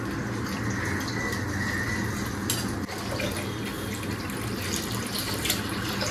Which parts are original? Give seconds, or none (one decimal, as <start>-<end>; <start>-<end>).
0.0-6.1